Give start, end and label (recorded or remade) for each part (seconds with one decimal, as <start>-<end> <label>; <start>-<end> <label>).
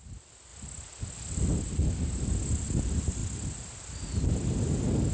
0.0-5.1 recorded